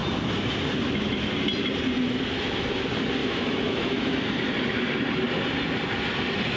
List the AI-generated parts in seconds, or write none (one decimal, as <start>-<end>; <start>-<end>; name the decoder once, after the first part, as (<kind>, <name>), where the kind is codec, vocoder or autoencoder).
3.2-4.2 (autoencoder, DAC-VAE)